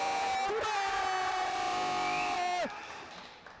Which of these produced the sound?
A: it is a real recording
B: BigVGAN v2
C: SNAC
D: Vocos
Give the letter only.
A